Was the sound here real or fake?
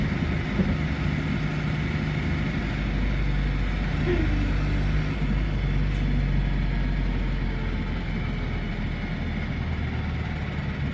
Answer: real